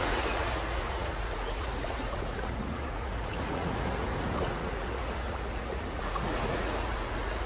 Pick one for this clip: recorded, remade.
remade